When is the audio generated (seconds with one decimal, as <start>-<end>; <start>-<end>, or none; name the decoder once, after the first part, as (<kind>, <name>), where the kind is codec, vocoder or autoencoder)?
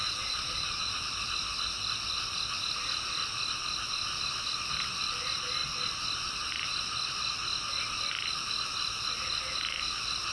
0.0-0.9 (vocoder, Vocos)